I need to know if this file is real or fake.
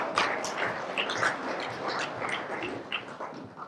real